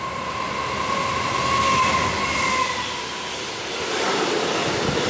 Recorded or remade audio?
recorded